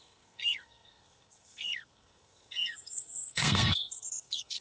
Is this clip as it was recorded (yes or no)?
no